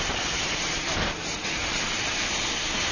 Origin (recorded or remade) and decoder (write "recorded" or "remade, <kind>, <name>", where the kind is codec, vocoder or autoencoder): recorded